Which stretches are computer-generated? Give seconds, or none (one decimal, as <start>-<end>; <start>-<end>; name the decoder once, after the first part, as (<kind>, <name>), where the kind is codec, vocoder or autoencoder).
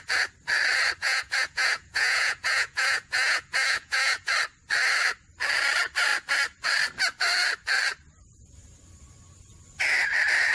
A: 1.0-4.3 (vocoder, Vocos)